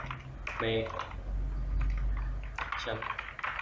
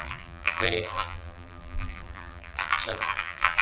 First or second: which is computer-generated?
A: second